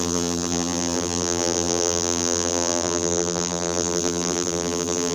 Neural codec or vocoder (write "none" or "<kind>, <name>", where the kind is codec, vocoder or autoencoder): vocoder, BigVGAN v2